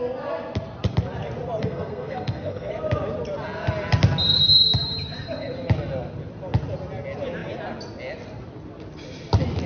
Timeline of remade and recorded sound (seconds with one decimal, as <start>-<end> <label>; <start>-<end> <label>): 0.0-1.6 recorded; 1.6-2.7 remade; 2.7-9.7 recorded